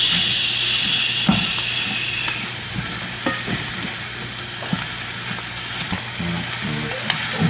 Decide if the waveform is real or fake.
real